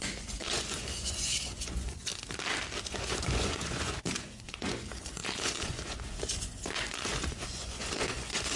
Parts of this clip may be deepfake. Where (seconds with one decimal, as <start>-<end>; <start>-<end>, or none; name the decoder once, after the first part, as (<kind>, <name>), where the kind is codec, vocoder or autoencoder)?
0.0-2.1 (vocoder, Vocos); 2.8-8.6